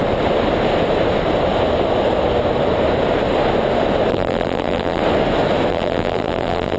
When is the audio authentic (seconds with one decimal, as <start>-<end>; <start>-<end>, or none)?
0.0-4.1; 5.0-5.7